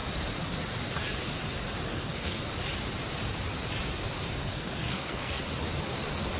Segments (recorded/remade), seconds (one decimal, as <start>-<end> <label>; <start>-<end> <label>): 0.0-1.9 recorded; 1.9-2.4 remade; 2.4-4.4 recorded; 4.4-5.4 remade; 5.4-6.4 recorded